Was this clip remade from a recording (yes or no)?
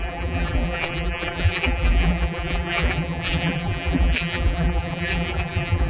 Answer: yes